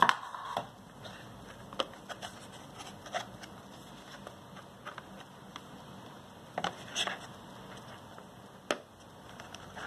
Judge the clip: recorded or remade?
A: recorded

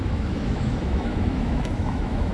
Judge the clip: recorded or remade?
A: remade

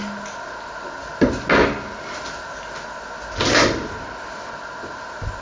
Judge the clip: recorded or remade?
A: recorded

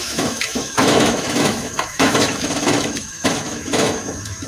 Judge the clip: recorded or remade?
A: remade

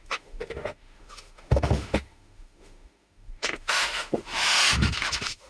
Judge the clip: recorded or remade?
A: remade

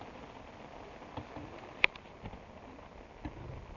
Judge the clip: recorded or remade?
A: recorded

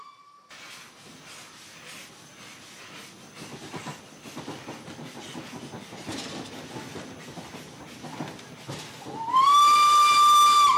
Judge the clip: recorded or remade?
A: recorded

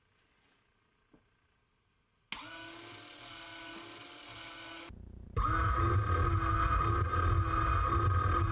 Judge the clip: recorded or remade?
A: recorded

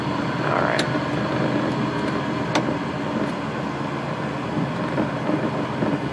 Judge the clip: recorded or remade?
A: recorded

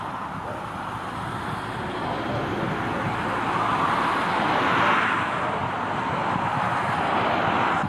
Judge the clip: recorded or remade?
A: recorded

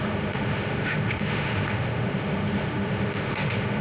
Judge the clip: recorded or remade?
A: remade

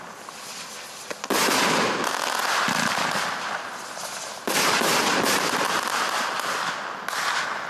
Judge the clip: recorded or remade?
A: recorded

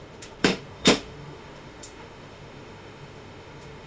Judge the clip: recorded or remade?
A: remade